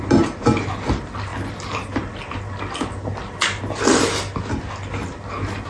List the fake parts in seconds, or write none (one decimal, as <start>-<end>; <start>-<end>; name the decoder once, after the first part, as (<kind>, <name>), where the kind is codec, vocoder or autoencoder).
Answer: none

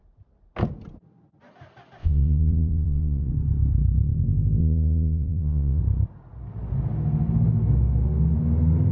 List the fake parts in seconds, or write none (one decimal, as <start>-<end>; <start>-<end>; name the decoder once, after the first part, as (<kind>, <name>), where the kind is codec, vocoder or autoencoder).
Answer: 2.0-3.3 (vocoder, Vocos); 4.6-5.8

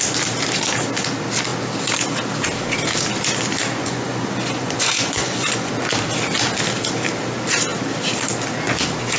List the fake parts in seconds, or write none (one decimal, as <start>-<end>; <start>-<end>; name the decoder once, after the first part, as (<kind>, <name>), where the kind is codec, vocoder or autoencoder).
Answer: 3.8-5.7 (vocoder, Vocos)

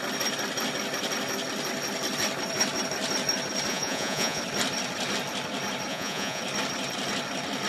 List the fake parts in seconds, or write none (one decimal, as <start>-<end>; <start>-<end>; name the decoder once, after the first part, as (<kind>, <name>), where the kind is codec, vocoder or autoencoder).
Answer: 3.7-4.4 (vocoder, Vocos); 5.9-6.4

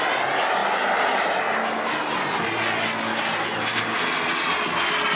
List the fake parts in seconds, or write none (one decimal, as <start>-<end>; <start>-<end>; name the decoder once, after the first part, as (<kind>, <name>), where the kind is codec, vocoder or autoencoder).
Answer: none

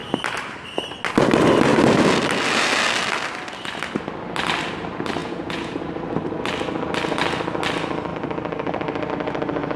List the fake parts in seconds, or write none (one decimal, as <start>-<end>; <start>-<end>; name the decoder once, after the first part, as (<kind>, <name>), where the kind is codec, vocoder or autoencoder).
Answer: 5.2-5.8 (vocoder, Vocos)